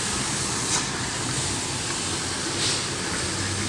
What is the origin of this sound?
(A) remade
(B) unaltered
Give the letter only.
B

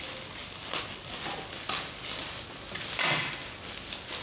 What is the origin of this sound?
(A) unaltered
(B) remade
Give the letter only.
A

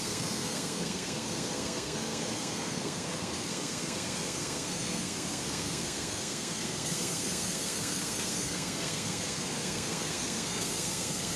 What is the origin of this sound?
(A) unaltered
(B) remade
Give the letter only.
B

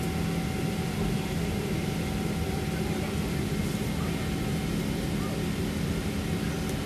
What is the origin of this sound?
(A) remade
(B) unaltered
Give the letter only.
B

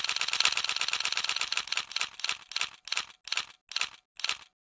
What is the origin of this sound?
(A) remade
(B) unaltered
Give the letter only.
B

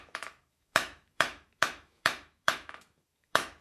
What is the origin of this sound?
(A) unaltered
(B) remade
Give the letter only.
B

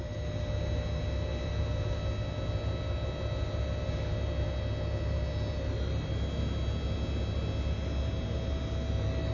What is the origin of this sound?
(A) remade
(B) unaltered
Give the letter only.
B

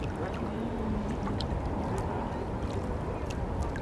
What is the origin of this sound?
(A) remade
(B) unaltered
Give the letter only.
B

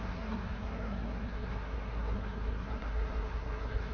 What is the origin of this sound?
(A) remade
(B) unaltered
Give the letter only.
A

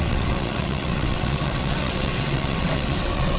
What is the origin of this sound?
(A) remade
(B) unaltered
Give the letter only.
A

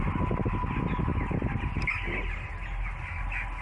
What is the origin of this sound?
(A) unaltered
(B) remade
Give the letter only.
A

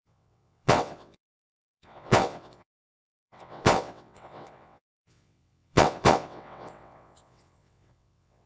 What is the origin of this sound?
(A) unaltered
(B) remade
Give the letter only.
B